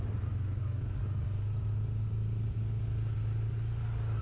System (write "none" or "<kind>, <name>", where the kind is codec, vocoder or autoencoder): none